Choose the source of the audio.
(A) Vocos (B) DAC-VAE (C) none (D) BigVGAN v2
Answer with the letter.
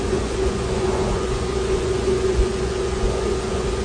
A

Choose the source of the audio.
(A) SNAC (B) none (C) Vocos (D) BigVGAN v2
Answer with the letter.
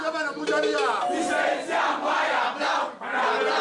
B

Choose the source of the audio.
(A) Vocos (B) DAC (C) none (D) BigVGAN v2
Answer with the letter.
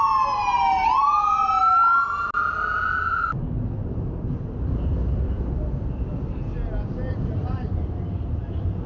C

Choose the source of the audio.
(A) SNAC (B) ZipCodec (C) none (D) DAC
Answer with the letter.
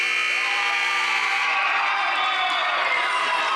C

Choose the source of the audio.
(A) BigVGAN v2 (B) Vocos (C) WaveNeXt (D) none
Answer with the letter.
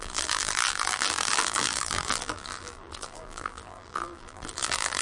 A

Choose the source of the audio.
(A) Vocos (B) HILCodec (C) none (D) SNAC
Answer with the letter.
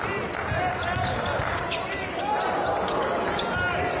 C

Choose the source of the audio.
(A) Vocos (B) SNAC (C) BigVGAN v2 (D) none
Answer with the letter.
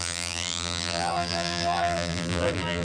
C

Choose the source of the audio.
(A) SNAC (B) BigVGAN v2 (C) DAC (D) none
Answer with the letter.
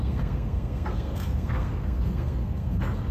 A